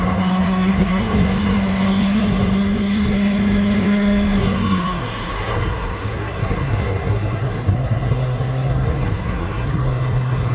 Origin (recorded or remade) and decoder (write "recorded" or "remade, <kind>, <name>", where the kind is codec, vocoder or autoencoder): remade, codec, SNAC